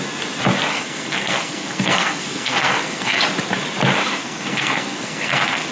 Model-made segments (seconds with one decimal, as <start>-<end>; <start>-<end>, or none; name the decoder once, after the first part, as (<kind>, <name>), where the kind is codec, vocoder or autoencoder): 0.7-3.2 (codec, SNAC); 4.0-5.7